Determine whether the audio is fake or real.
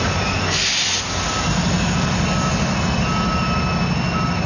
real